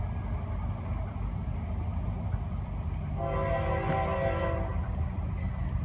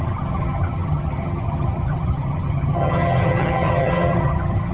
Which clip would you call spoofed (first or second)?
second